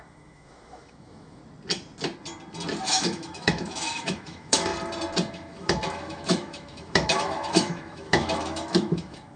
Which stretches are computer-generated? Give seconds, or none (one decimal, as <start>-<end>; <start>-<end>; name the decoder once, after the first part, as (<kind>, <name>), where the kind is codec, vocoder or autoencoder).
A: 0.0-1.4 (autoencoder, DAC-VAE); 2.8-4.7; 5.3-9.4